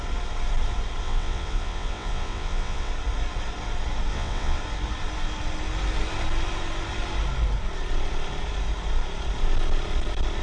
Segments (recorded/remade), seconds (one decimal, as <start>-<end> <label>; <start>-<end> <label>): 0.0-1.0 recorded; 1.0-2.9 remade; 2.9-4.1 recorded; 4.1-4.6 remade; 4.6-10.4 recorded